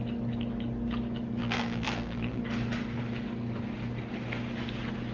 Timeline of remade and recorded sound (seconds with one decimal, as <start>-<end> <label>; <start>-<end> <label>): 0.0-1.4 recorded; 1.4-2.4 remade; 2.4-5.1 recorded